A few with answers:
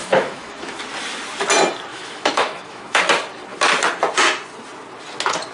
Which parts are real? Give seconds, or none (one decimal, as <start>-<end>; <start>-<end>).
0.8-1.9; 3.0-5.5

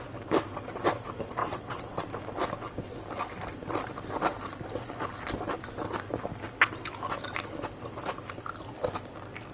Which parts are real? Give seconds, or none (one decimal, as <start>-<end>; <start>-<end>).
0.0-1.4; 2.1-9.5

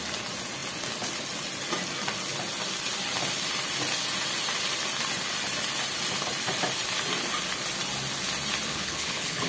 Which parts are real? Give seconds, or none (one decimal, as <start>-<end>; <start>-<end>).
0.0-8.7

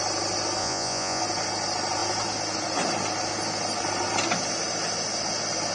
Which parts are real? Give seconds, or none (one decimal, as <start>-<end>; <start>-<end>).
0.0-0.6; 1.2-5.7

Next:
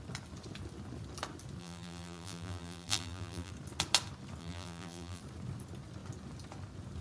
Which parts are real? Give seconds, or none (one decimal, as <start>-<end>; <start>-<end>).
0.0-1.6; 3.5-4.4; 5.2-7.0